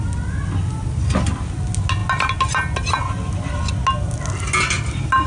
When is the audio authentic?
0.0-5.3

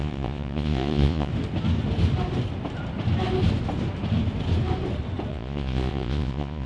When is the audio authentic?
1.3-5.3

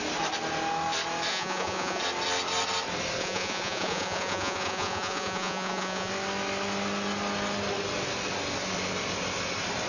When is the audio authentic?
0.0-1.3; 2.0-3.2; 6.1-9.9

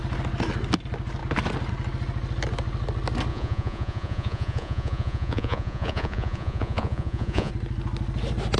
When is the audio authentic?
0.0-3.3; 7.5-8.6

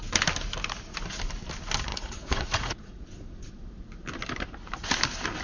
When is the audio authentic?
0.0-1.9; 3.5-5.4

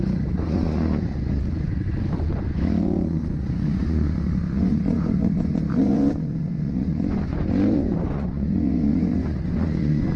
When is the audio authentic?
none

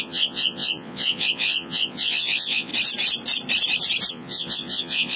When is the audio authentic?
2.7-4.1

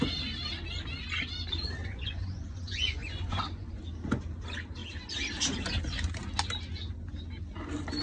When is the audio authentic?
0.0-1.8; 3.8-8.0